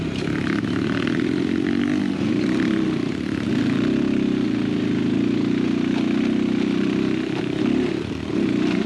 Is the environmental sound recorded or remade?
recorded